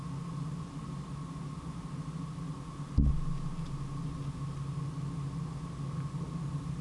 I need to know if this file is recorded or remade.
recorded